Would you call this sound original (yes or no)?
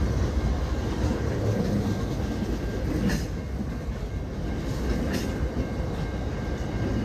yes